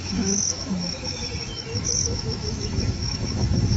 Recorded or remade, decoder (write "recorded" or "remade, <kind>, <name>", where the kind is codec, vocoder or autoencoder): remade, autoencoder, DAC-VAE